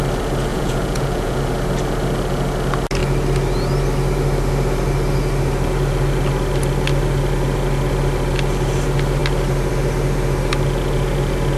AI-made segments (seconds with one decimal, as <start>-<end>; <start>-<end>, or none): 0.5-1.4